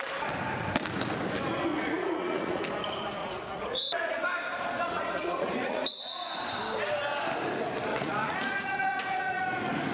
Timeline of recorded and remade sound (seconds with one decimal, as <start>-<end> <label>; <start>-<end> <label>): 0.0-1.7 recorded; 1.7-2.6 remade; 2.6-3.2 recorded; 3.2-6.3 remade; 6.3-7.9 recorded; 7.9-9.4 remade; 9.4-9.9 recorded